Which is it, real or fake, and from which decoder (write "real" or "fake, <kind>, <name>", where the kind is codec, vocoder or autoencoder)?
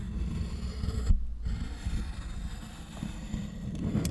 real